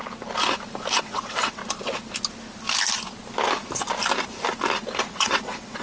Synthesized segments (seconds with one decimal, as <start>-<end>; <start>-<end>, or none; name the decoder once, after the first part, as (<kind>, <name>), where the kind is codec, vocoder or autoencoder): 1.0-1.6 (vocoder, WaveNeXt); 5.1-5.8